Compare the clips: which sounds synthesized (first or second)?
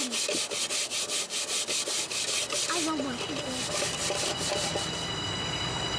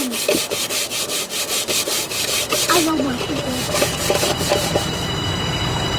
second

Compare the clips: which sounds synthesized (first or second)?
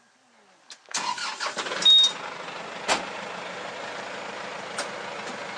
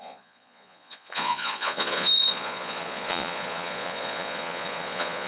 second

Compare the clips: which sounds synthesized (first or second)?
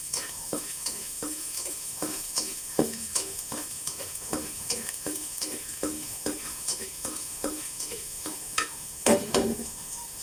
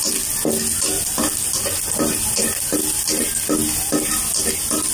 first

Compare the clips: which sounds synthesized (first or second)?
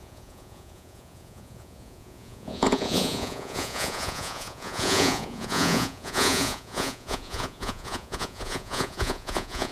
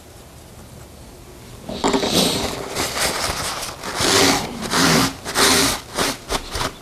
first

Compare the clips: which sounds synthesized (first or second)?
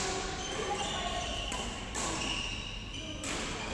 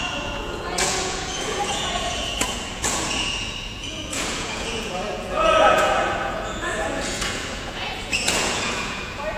second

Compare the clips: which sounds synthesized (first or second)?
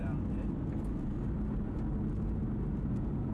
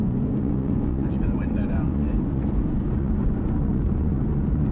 second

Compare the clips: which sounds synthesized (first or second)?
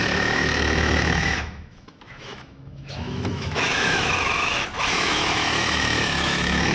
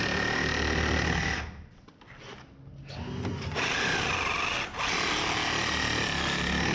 first